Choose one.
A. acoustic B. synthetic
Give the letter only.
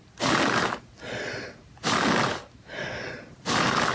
A